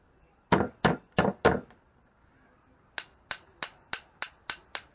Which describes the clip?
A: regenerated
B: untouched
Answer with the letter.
B